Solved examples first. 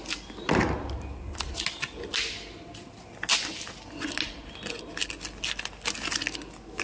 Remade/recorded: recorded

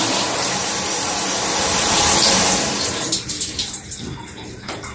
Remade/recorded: remade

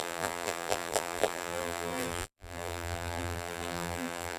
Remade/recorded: remade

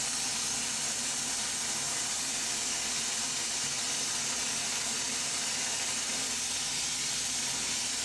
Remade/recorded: recorded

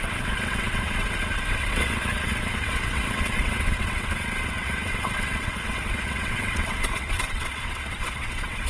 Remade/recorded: remade